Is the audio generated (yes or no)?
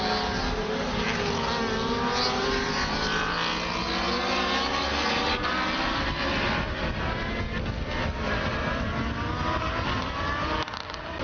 no